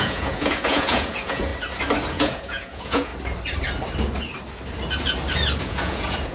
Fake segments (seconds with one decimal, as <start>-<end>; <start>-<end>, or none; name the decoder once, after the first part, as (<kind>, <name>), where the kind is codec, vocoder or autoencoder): 0.0-1.5 (vocoder, Vocos); 2.1-3.1; 5.6-6.3